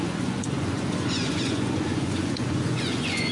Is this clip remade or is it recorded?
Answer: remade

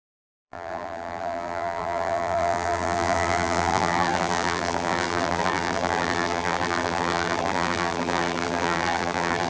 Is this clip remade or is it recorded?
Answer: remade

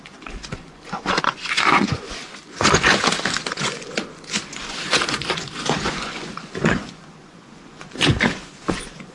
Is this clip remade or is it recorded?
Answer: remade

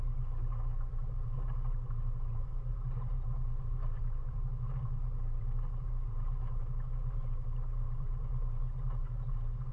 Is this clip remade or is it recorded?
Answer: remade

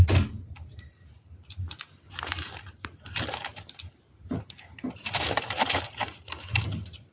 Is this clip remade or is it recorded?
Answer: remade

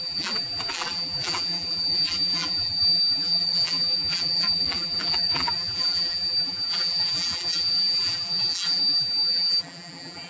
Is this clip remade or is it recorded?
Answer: remade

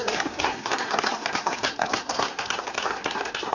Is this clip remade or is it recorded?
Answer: remade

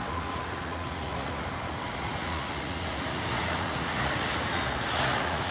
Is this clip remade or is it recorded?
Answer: remade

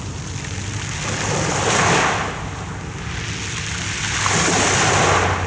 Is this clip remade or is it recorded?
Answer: recorded